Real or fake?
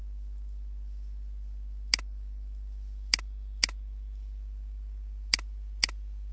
real